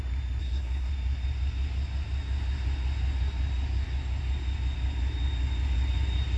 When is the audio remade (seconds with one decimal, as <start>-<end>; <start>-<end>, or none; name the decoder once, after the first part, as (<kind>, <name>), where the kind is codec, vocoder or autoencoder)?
0.4-0.9 (codec, SNAC)